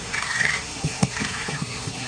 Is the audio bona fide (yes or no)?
no